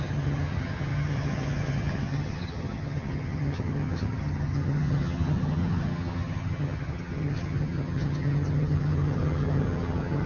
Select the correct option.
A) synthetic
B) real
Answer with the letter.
A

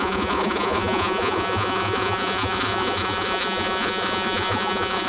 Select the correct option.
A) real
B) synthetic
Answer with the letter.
B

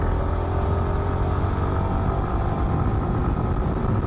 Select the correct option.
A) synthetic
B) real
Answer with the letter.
B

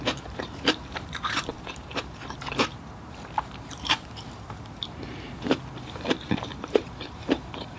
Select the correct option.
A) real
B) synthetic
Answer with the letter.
B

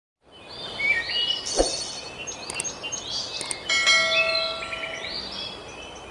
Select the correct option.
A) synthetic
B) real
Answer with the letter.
B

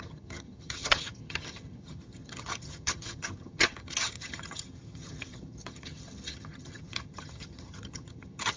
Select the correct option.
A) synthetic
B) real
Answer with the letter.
A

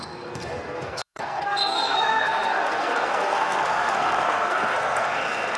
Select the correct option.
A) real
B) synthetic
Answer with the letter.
B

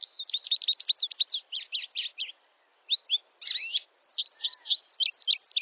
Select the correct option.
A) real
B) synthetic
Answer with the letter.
A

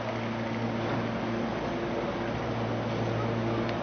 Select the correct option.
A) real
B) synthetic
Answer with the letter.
A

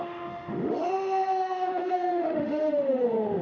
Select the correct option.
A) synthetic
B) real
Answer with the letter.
A